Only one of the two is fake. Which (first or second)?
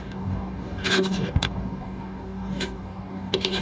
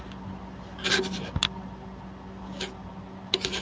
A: first